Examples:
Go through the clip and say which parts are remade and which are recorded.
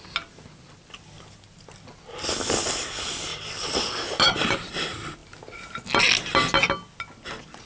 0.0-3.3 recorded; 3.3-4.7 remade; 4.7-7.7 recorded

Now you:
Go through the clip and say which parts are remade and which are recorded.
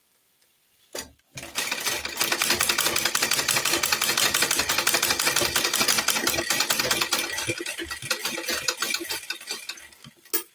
0.0-8.2 recorded; 8.2-9.8 remade; 9.8-10.5 recorded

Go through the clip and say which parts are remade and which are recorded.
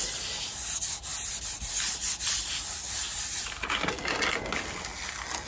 0.0-5.5 recorded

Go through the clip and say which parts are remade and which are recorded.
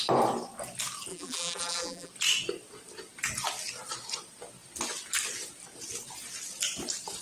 0.0-1.1 recorded; 1.1-2.1 remade; 2.1-7.2 recorded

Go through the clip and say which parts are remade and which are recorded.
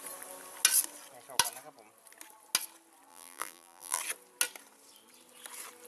0.0-3.1 recorded; 3.1-4.0 remade; 4.0-5.9 recorded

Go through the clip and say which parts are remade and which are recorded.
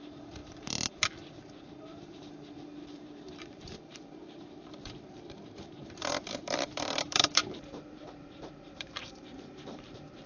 0.0-0.4 remade; 0.4-2.0 recorded; 2.0-10.3 remade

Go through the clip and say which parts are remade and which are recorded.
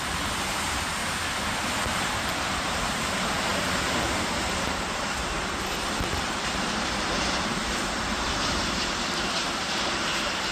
0.0-1.0 remade; 1.0-1.8 recorded; 1.8-3.5 remade; 3.5-5.6 recorded; 5.6-10.5 remade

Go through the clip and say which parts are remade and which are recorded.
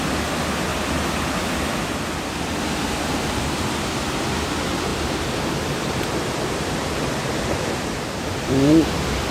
0.0-0.7 remade; 0.7-2.3 recorded; 2.3-9.3 remade